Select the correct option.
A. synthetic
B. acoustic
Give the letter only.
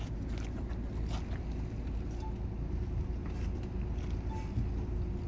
B